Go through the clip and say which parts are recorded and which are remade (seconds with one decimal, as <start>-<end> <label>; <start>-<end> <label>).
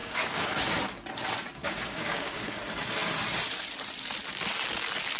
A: 0.0-0.6 remade; 0.6-1.6 recorded; 1.6-2.6 remade; 2.6-5.2 recorded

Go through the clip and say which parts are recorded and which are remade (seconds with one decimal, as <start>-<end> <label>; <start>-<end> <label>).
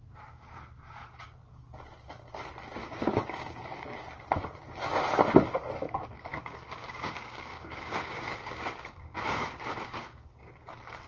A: 0.0-2.8 recorded; 2.8-4.0 remade; 4.0-6.3 recorded; 6.3-10.5 remade; 10.5-11.1 recorded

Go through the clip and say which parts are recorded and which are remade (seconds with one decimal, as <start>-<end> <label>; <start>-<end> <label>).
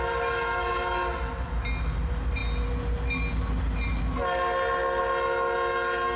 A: 0.0-6.2 recorded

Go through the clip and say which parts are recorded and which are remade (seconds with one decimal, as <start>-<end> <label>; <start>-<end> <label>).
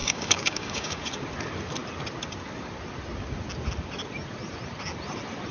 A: 0.0-1.0 remade; 1.0-5.5 recorded